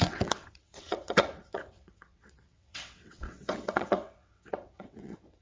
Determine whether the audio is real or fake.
fake